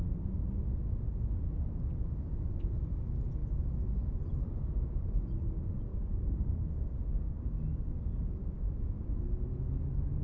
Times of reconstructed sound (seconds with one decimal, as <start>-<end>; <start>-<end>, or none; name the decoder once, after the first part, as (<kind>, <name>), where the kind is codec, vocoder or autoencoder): 5.9-9.0 (codec, DAC)